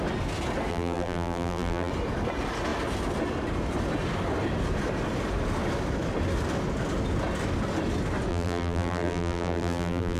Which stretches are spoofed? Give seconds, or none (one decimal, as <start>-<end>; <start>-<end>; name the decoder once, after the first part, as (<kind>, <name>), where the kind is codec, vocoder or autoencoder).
0.7-1.9 (vocoder, BigVGAN v2); 8.3-10.2